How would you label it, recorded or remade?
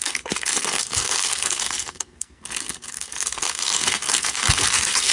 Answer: remade